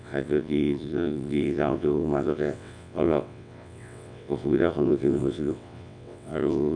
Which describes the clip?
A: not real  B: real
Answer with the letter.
A